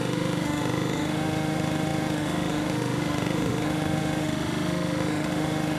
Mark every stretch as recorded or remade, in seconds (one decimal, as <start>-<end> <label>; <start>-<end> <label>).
0.0-5.8 remade